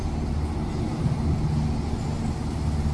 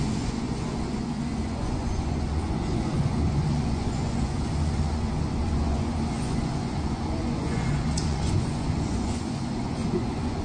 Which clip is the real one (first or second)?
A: first